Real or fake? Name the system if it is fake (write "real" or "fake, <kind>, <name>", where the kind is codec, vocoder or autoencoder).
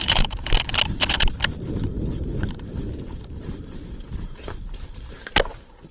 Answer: fake, vocoder, BigVGAN v2